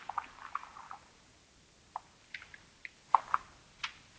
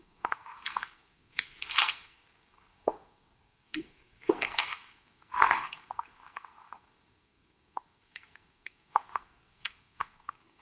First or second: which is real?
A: first